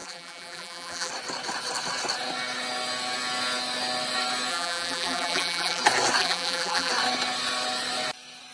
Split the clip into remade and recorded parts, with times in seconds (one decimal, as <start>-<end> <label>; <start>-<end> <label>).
0.0-1.1 remade; 1.1-4.5 recorded; 4.5-5.8 remade; 5.8-6.2 recorded; 6.2-6.9 remade; 6.9-8.5 recorded